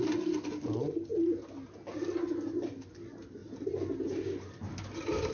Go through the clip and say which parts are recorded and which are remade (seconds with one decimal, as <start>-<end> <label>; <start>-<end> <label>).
0.0-5.3 recorded